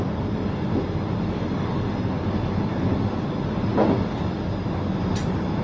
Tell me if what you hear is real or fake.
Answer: real